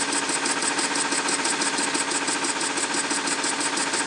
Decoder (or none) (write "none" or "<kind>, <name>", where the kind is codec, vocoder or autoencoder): none